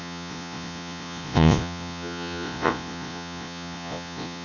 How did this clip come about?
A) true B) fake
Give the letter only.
B